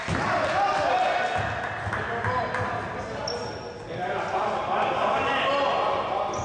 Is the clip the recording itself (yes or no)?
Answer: yes